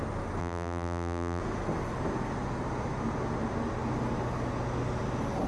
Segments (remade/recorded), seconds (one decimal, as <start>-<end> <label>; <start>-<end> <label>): 0.0-0.4 recorded; 0.4-1.4 remade; 1.4-5.5 recorded